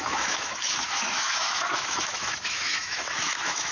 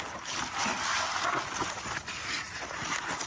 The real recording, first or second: second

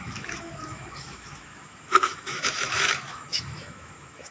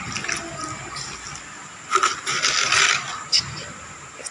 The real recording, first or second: second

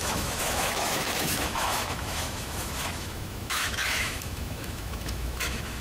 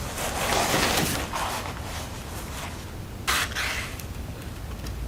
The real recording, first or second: second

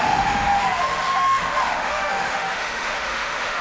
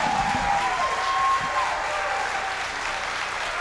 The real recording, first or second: second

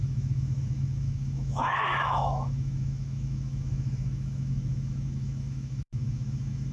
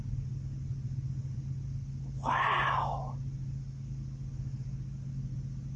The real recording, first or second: second